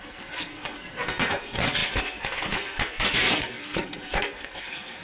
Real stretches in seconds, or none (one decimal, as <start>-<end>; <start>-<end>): none